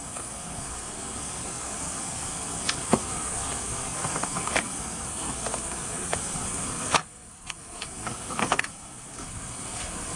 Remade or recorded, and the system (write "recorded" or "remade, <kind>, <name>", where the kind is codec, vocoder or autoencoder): remade, codec, SNAC